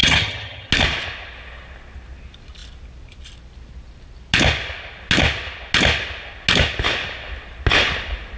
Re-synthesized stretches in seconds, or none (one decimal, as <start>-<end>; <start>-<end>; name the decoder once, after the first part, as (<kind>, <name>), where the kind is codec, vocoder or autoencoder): 0.0-0.7 (vocoder, HiFi-GAN)